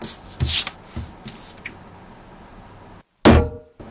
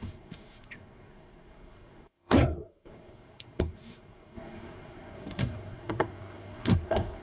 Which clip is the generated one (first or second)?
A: second